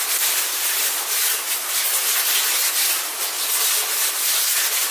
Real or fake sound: real